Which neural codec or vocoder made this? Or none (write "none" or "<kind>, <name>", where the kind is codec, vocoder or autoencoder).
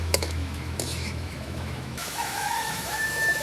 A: autoencoder, DAC-VAE